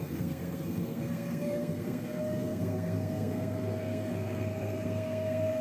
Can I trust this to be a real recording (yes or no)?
no